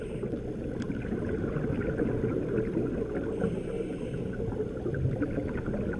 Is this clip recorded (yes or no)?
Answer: yes